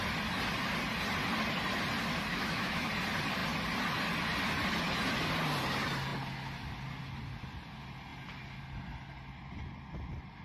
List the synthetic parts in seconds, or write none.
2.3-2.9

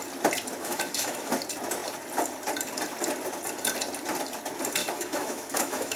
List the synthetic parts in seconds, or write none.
0.6-1.3; 4.8-6.0

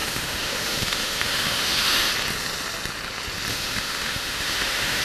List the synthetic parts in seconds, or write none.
0.0-2.1; 3.5-5.0

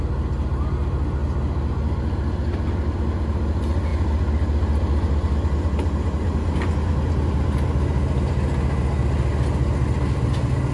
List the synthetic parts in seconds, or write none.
none

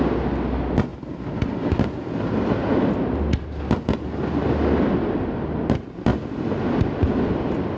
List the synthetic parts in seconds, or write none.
none

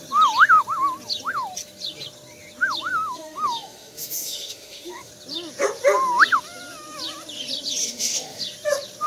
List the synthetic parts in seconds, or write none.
2.9-5.1; 7.8-8.4

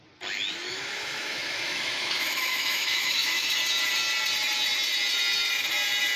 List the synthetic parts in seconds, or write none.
0.7-3.6